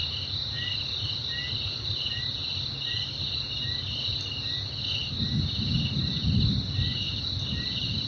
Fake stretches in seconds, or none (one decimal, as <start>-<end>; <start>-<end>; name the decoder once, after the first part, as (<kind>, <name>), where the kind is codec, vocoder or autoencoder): none